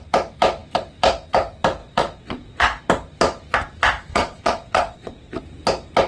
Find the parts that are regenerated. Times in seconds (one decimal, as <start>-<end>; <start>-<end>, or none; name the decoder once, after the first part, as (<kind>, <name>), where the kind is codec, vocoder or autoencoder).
1.8-2.9 (vocoder, Vocos); 4.1-5.4